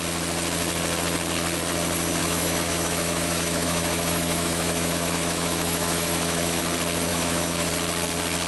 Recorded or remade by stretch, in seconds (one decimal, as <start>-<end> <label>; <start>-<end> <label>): 0.0-2.2 recorded; 2.2-6.6 remade; 6.6-7.1 recorded; 7.1-7.7 remade; 7.7-8.5 recorded